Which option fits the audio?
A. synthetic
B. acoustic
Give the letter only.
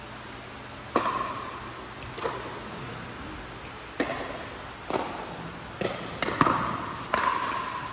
B